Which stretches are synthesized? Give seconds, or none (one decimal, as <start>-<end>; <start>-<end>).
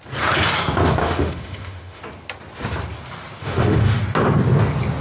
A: 1.0-2.0; 3.4-4.0